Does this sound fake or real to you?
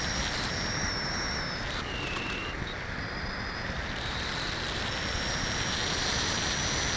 real